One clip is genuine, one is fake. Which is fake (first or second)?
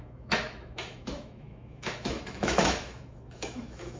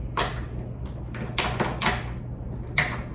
first